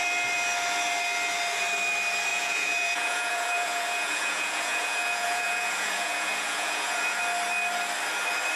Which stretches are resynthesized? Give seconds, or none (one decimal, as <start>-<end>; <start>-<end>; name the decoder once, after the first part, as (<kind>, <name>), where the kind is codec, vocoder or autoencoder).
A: 2.3-7.2 (vocoder, Vocos)